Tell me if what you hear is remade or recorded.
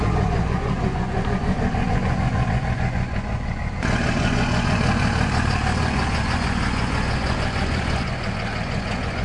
remade